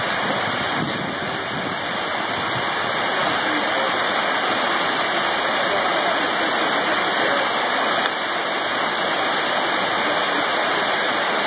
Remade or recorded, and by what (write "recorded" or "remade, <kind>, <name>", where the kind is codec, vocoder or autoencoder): recorded